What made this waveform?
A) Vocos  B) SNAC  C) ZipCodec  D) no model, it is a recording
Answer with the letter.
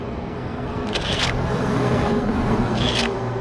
B